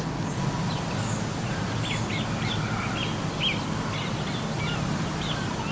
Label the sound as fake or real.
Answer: real